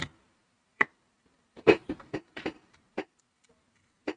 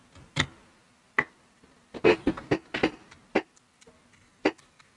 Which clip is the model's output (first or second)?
first